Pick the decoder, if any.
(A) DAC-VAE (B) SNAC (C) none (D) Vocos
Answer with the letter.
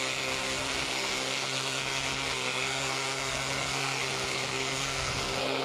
B